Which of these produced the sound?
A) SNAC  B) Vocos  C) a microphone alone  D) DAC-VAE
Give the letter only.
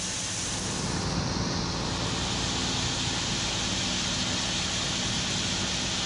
C